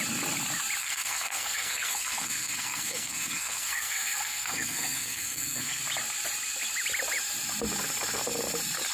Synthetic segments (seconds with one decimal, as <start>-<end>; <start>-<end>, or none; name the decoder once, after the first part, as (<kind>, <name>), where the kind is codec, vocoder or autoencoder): 0.8-5.8 (codec, SNAC)